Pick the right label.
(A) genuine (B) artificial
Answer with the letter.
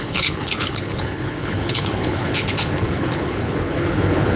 B